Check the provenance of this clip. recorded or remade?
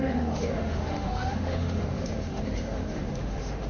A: remade